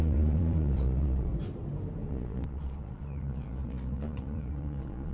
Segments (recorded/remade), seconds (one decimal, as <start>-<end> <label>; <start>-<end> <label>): 0.0-1.3 remade; 1.3-2.1 recorded; 2.1-5.1 remade